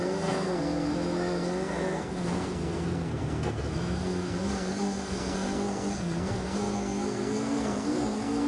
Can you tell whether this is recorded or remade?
remade